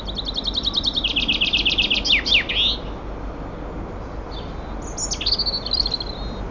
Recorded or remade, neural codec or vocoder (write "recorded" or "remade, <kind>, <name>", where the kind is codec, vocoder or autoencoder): recorded